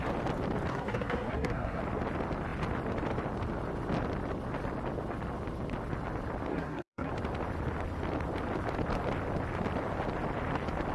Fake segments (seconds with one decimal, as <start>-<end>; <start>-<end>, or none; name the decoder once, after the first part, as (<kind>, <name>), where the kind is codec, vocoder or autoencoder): 0.7-1.8 (codec, SNAC); 6.5-7.1